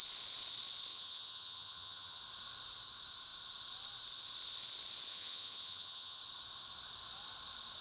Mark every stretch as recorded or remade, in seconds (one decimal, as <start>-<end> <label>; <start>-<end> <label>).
0.0-0.9 recorded; 0.9-2.2 remade; 2.2-5.1 recorded; 5.1-6.2 remade; 6.2-7.8 recorded

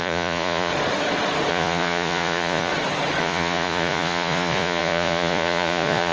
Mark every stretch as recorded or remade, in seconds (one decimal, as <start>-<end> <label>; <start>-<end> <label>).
0.0-0.7 remade; 0.7-1.5 recorded; 1.5-2.7 remade; 2.7-3.2 recorded; 3.2-6.1 remade

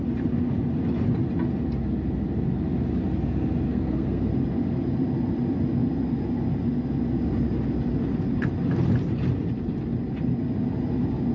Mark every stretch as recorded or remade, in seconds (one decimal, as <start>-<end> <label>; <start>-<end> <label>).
0.0-3.7 recorded; 3.7-4.3 remade; 4.3-11.3 recorded

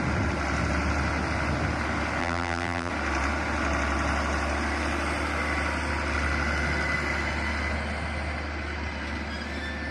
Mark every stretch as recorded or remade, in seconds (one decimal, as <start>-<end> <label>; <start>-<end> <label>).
0.0-2.2 recorded; 2.2-2.9 remade; 2.9-9.9 recorded